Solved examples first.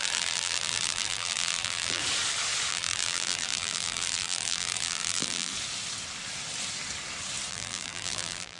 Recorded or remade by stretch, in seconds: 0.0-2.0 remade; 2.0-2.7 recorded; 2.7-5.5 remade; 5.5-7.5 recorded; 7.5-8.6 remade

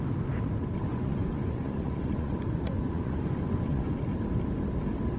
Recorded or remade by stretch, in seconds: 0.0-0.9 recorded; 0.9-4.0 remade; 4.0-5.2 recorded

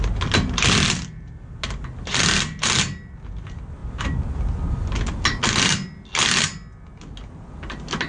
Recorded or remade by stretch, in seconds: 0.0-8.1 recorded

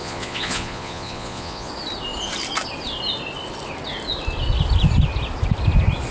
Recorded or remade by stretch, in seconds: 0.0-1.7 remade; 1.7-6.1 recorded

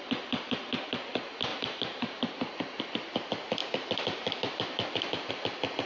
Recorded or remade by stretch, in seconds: 0.0-1.5 recorded; 1.5-2.8 remade; 2.8-3.6 recorded; 3.6-5.3 remade; 5.3-5.9 recorded

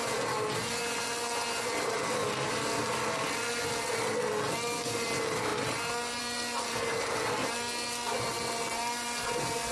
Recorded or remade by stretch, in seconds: 0.0-9.7 recorded